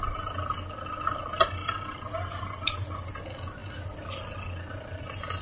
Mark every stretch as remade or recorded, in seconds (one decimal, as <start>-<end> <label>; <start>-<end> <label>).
0.0-5.4 recorded